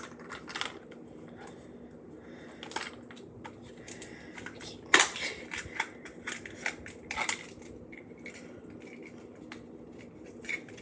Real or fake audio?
real